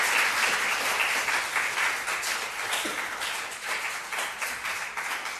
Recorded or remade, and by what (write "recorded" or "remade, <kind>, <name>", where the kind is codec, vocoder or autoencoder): recorded